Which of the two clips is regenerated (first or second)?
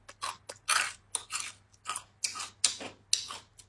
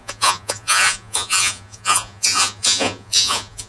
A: second